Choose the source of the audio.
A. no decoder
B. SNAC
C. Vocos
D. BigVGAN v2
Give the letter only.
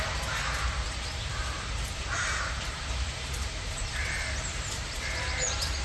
D